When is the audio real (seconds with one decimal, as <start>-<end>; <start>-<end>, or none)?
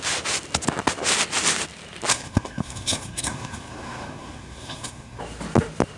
0.0-2.1; 5.2-6.0